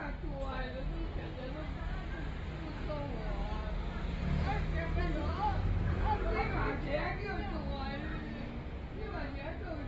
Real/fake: real